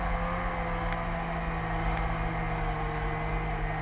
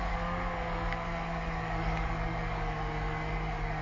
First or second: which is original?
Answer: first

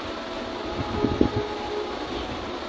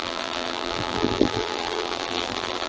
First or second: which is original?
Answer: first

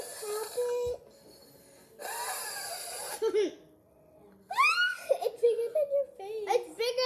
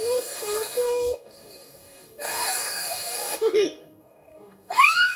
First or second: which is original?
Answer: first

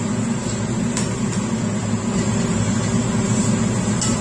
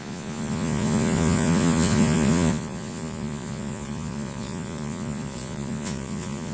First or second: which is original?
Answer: first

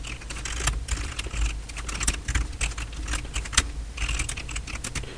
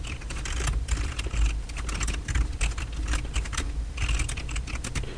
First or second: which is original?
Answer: first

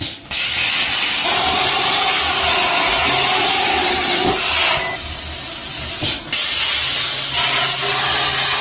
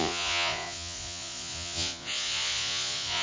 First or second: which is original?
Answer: first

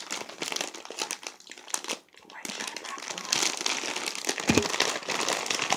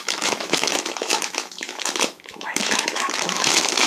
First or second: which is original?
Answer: first